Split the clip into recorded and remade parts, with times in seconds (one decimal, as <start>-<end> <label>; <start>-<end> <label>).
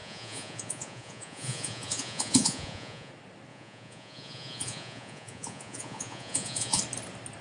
0.0-3.1 remade; 3.1-3.5 recorded; 3.5-6.8 remade; 6.8-7.4 recorded